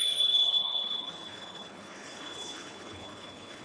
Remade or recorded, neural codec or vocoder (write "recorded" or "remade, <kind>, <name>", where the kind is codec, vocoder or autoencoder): remade, codec, HILCodec